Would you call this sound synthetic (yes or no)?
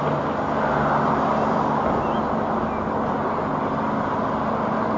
no